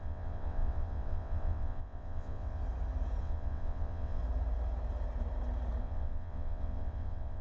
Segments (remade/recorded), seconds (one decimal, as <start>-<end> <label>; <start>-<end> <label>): 0.0-2.6 remade; 2.6-3.2 recorded; 3.2-4.2 remade; 4.2-5.8 recorded; 5.8-7.4 remade